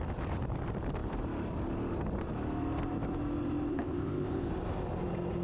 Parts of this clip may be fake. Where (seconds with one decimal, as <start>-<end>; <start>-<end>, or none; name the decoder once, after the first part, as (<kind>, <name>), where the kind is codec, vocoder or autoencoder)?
3.7-4.5 (codec, ZipCodec)

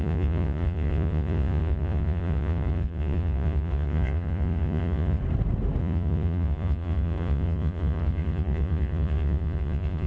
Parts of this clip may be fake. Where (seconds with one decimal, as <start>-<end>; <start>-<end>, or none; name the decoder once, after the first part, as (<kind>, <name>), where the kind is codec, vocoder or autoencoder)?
0.0-5.2 (vocoder, Vocos); 5.8-10.1

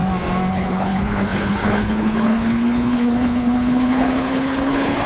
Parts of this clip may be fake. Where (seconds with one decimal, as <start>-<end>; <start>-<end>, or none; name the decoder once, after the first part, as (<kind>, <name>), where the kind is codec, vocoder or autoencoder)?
0.5-5.1 (codec, HILCodec)

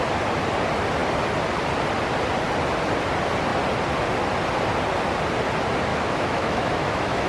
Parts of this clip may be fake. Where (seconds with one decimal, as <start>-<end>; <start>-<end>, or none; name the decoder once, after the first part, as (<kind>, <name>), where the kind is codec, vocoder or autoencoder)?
5.9-7.3 (autoencoder, DAC-VAE)